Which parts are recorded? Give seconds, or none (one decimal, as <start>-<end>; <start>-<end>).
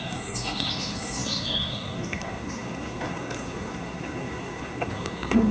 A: none